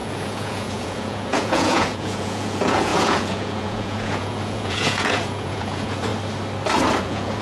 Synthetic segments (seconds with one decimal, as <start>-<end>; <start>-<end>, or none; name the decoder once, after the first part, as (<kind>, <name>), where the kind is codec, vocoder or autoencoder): 0.0-6.1 (vocoder, Vocos); 7.0-7.4